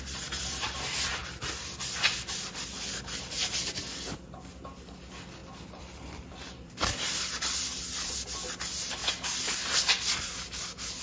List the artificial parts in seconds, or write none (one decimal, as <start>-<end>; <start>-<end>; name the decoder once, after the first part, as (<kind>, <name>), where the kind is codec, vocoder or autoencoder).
1.2-2.7 (vocoder, BigVGAN v2); 5.4-7.8